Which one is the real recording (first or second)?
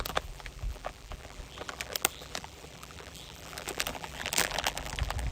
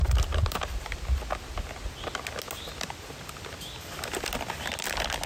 second